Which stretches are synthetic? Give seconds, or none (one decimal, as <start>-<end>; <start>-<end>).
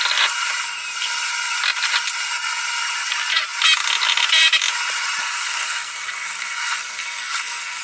5.2-7.8